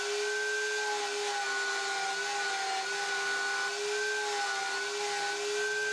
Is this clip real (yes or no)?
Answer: yes